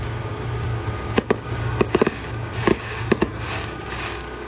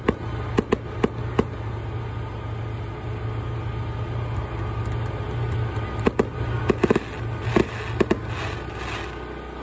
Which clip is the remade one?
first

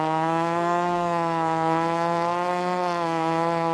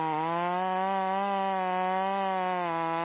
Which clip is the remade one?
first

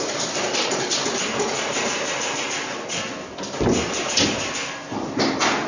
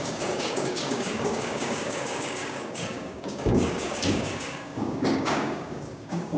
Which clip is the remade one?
second